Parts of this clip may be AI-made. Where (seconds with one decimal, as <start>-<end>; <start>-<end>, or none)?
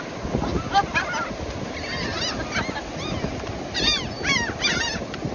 none